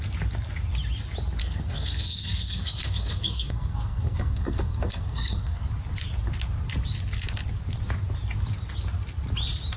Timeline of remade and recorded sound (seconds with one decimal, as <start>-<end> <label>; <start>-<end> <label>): 0.0-1.4 recorded; 1.4-5.7 remade; 5.7-9.8 recorded